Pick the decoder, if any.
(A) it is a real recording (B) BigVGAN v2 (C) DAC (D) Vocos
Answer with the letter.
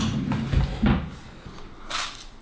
A